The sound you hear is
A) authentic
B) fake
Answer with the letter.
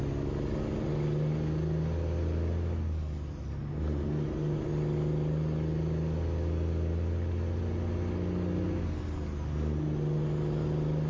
A